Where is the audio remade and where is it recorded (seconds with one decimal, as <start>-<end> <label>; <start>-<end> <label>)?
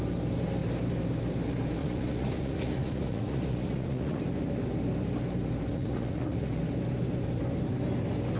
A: 0.0-1.8 recorded; 1.8-4.2 remade; 4.2-5.7 recorded; 5.7-6.5 remade; 6.5-8.4 recorded